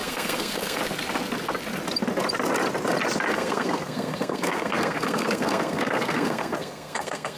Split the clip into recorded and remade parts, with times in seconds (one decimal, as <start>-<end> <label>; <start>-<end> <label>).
0.0-0.8 remade; 0.8-3.3 recorded; 3.3-7.4 remade

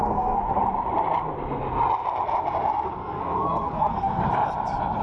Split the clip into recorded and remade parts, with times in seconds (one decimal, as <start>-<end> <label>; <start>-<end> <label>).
0.0-0.6 remade; 0.6-3.0 recorded; 3.0-4.2 remade; 4.2-5.0 recorded